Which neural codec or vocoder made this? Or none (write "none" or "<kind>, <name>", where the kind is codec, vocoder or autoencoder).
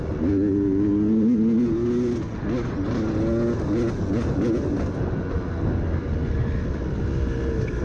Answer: none